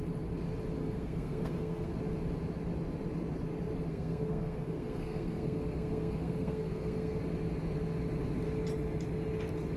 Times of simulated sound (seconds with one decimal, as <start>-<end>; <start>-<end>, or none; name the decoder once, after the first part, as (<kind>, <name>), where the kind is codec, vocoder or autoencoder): 0.8-1.9 (codec, SNAC); 3.9-7.2